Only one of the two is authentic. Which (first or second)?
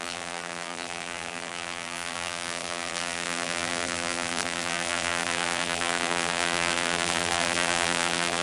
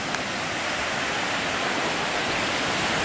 second